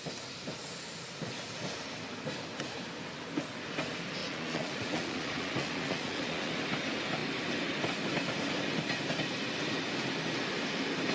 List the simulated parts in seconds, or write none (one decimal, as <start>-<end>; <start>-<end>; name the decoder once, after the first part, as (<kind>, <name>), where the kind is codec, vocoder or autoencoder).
4.2-6.5 (vocoder, Vocos)